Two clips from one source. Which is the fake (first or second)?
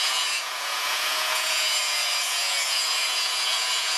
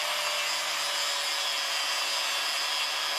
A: first